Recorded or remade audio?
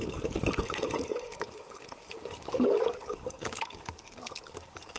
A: remade